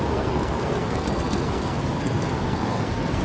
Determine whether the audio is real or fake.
fake